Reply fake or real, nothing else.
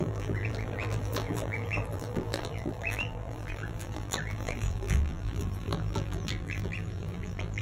fake